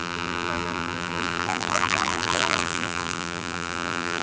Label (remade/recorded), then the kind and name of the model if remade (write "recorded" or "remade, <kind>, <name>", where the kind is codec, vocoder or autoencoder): remade, vocoder, BigVGAN v2